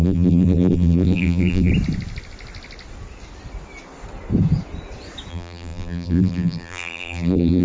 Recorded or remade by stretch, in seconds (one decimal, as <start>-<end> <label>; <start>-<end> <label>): 0.0-1.7 remade; 1.7-5.3 recorded; 5.3-7.6 remade